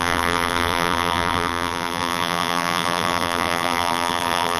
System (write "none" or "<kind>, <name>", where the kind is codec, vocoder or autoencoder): vocoder, BigVGAN v2